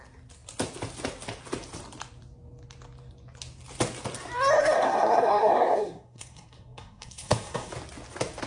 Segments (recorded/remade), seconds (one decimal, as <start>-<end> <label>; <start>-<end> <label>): 0.0-4.6 recorded; 4.6-7.7 remade; 7.7-8.5 recorded